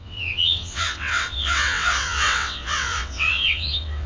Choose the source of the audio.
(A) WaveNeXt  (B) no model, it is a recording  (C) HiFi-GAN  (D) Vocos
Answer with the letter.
A